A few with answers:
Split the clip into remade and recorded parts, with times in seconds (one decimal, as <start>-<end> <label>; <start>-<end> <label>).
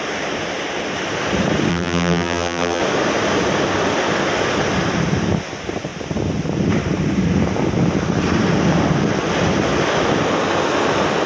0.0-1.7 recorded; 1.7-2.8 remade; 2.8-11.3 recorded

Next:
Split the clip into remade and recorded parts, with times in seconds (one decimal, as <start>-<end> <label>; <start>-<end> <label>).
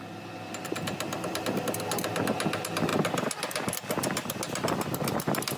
0.0-1.1 recorded; 1.1-1.6 remade; 1.6-5.6 recorded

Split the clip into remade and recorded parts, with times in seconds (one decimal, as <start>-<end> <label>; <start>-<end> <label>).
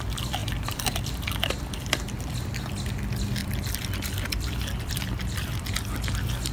0.0-0.4 recorded; 0.4-1.3 remade; 1.3-3.4 recorded; 3.4-5.7 remade; 5.7-6.5 recorded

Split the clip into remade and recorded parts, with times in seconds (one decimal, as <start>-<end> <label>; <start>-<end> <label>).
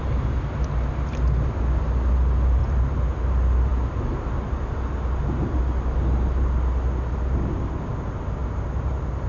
0.0-2.6 recorded; 2.6-3.2 remade; 3.2-8.4 recorded; 8.4-9.3 remade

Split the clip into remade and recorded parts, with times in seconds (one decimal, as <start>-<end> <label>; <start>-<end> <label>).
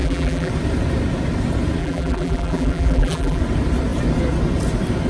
0.0-0.5 remade; 0.5-1.8 recorded; 1.8-3.4 remade; 3.4-5.1 recorded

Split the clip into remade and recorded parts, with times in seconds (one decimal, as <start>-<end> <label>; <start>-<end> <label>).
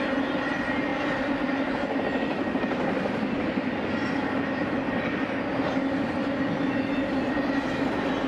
0.0-0.9 recorded; 0.9-4.4 remade; 4.4-8.3 recorded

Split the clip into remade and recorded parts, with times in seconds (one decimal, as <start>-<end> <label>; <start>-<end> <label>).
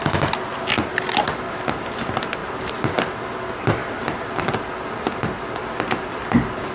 0.0-2.4 recorded; 2.4-3.0 remade; 3.0-3.8 recorded; 3.8-4.4 remade; 4.4-6.7 recorded